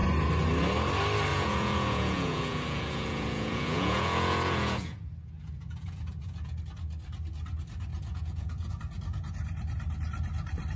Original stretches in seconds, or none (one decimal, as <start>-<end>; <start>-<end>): 0.0-1.3; 6.6-7.9; 8.7-10.8